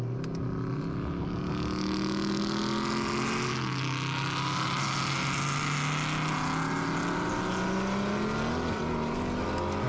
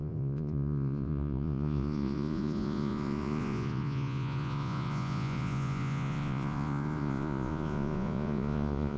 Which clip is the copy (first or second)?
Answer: second